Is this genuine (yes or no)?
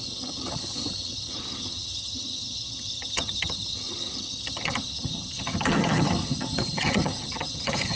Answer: no